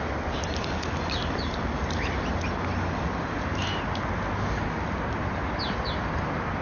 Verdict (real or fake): real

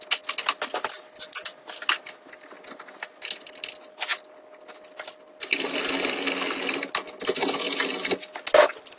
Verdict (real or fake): real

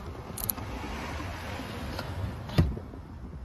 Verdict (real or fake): real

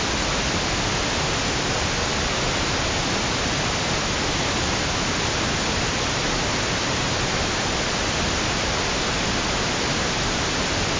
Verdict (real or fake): real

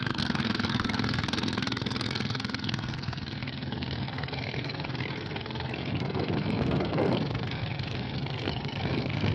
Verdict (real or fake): fake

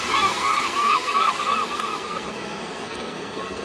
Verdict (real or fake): fake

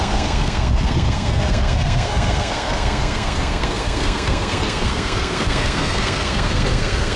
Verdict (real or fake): fake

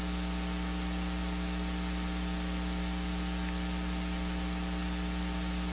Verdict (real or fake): real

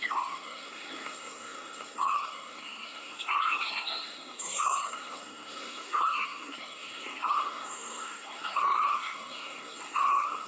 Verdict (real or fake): fake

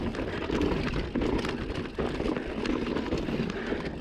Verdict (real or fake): real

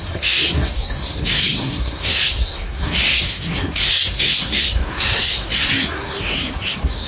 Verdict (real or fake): fake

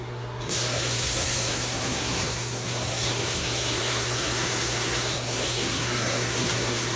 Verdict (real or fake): fake